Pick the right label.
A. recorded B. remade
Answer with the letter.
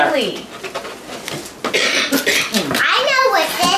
A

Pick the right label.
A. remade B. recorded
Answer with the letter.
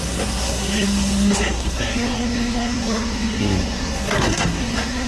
A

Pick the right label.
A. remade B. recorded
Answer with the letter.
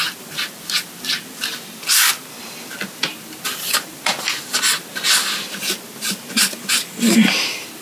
B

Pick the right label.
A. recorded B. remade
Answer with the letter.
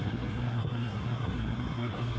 B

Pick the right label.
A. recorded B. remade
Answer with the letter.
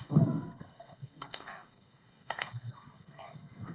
B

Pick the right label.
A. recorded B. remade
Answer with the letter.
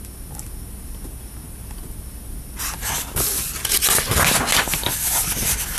A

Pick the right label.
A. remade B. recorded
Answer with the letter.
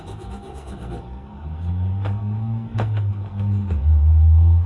A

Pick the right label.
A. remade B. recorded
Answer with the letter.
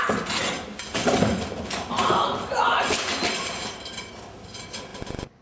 B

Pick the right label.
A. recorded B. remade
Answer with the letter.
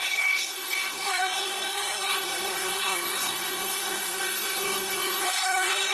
B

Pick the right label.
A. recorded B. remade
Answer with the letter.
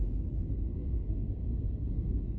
B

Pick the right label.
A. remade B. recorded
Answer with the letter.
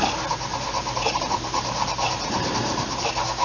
B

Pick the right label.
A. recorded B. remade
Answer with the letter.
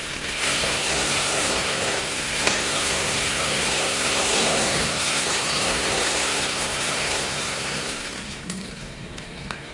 B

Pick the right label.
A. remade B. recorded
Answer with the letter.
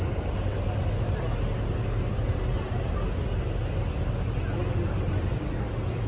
B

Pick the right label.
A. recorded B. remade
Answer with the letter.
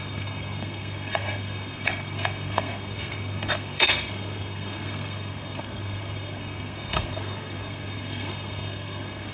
B